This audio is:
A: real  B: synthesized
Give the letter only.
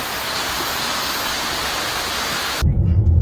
A